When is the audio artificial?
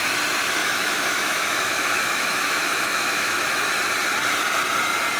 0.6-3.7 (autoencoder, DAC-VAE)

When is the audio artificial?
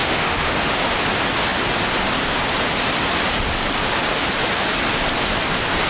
0.0-0.7 (autoencoder, DAC-VAE)